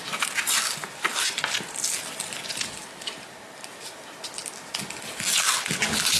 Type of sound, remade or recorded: recorded